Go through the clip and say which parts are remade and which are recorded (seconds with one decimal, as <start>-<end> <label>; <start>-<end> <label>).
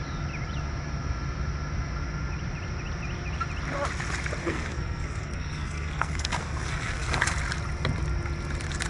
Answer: 0.0-4.4 recorded; 4.4-7.2 remade; 7.2-8.9 recorded